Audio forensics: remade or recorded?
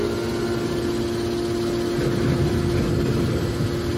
recorded